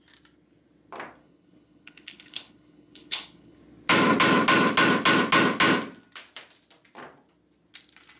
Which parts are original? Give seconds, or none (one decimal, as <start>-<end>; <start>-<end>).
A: 0.0-1.2; 3.6-8.2